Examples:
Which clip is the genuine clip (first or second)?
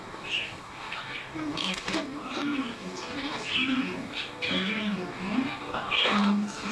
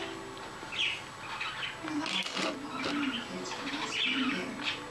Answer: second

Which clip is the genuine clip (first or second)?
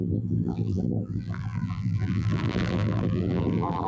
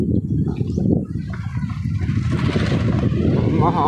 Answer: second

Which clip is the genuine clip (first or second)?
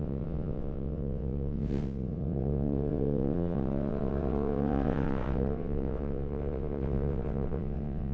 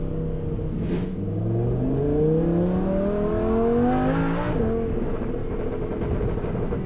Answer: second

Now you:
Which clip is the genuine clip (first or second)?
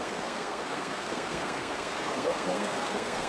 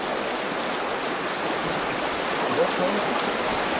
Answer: second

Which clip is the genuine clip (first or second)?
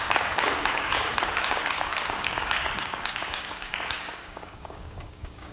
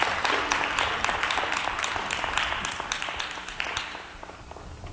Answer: second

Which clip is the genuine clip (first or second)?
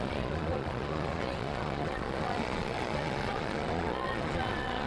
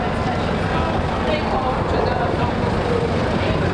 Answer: second